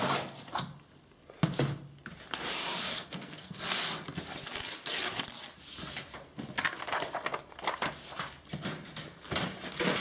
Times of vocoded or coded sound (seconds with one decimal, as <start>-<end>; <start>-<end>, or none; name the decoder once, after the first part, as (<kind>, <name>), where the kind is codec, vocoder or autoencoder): 2.9-3.6 (codec, SNAC)